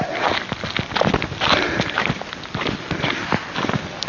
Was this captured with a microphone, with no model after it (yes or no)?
yes